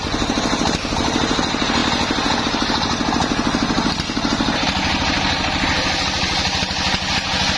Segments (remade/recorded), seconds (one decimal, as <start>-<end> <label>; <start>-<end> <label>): 0.0-7.6 recorded